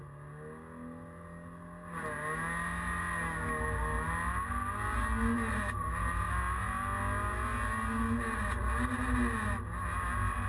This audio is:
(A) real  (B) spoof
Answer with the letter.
A